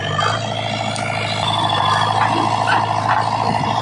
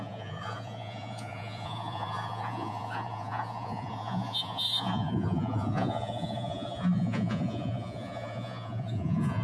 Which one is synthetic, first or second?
second